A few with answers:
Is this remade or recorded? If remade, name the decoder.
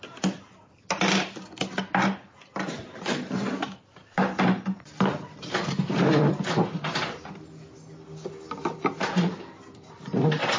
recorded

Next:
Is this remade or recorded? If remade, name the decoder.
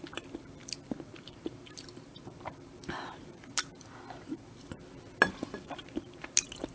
remade, vocoder, BigVGAN v2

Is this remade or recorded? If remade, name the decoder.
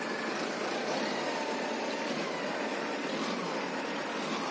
remade, vocoder, BigVGAN v2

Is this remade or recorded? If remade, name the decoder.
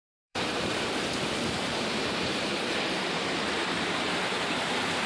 remade, vocoder, BigVGAN v2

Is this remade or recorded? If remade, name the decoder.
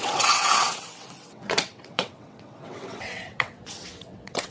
remade, vocoder, WaveNeXt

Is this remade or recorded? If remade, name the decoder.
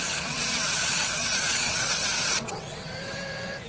remade, vocoder, WaveNeXt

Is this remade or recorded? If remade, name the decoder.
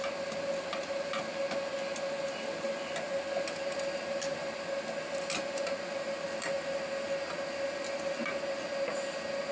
recorded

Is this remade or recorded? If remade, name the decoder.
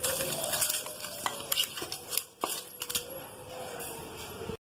recorded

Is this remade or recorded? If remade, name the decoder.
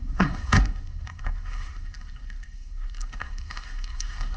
remade, codec, SNAC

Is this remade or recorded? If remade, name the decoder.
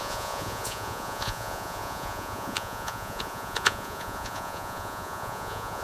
remade, vocoder, Vocos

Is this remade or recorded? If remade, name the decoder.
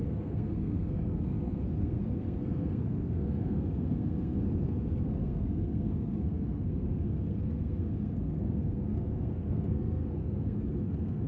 remade, codec, SNAC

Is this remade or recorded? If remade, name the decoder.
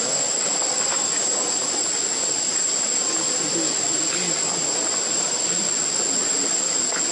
recorded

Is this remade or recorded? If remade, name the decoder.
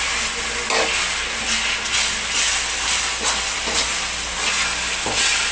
recorded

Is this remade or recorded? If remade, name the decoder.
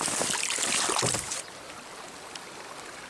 recorded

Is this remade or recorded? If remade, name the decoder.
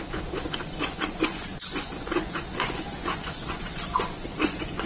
remade, vocoder, Vocos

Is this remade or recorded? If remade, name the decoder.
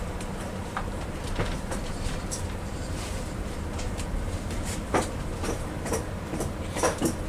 remade, vocoder, BigVGAN v2